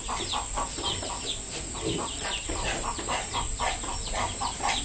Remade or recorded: recorded